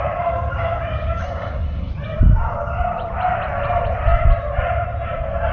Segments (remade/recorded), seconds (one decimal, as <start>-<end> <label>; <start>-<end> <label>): 0.0-1.2 recorded; 1.2-1.9 remade; 1.9-5.5 recorded